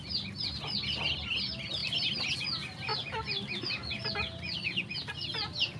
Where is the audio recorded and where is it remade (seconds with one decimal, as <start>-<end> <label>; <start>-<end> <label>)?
0.0-5.8 recorded